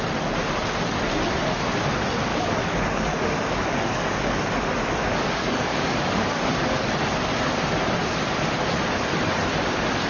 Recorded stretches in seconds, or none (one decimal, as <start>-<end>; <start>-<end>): 0.0-2.3; 4.4-5.1; 6.5-10.1